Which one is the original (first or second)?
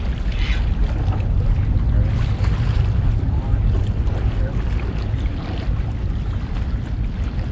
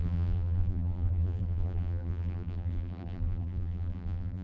first